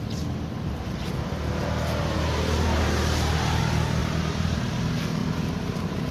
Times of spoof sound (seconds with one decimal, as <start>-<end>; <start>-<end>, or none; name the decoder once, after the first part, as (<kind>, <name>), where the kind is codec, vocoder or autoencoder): 2.0-3.6 (vocoder, BigVGAN v2); 4.0-4.6; 5.2-6.1